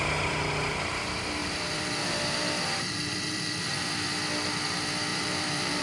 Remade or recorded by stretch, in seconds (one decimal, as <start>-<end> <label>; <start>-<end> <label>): 0.0-1.4 recorded; 1.4-3.9 remade; 3.9-5.1 recorded; 5.1-5.8 remade